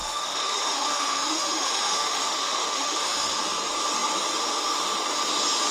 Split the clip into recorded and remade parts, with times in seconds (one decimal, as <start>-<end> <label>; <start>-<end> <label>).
0.0-3.4 remade; 3.4-5.7 recorded